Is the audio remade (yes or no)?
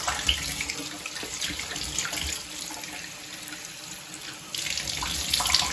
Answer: no